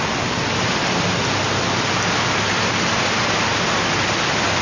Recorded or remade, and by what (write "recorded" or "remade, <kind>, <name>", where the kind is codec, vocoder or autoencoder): recorded